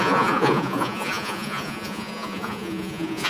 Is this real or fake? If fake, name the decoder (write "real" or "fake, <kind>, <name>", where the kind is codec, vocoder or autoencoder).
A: fake, vocoder, Vocos